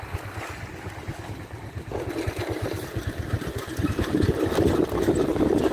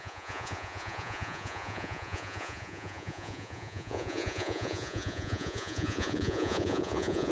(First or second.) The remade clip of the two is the second